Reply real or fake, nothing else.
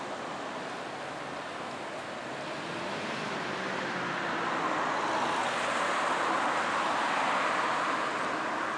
real